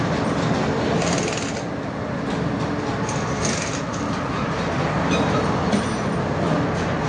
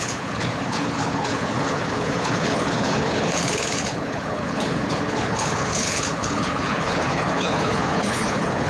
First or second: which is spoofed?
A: second